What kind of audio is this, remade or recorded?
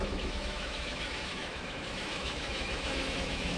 remade